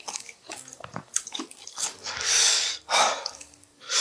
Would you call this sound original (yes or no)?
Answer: no